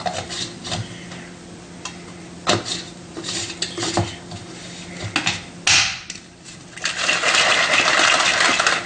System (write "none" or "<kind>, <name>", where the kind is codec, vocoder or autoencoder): none